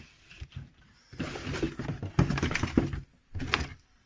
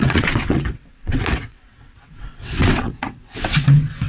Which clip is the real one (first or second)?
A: first